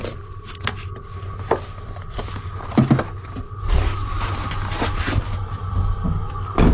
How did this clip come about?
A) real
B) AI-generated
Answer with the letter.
A